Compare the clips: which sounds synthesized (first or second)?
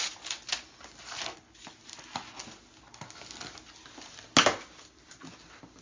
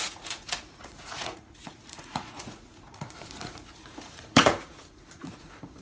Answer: second